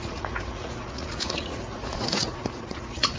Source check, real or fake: fake